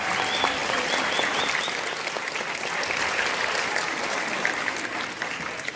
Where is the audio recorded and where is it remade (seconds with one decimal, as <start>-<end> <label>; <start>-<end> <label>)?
0.0-5.8 recorded